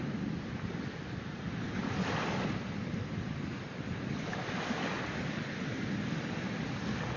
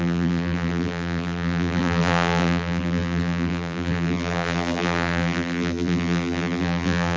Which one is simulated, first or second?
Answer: second